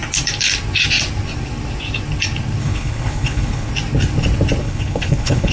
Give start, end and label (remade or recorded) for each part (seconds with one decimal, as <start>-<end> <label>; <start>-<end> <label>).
0.0-2.6 recorded; 2.6-3.7 remade; 3.7-4.6 recorded; 4.6-5.5 remade